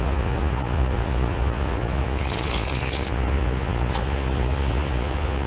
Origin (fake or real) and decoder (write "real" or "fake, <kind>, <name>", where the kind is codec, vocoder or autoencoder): fake, vocoder, Vocos